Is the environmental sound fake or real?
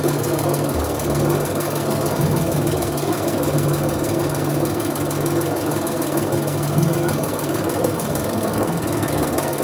fake